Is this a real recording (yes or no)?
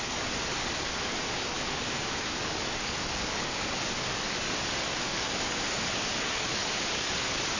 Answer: no